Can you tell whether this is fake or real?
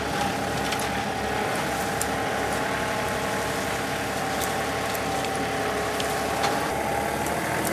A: real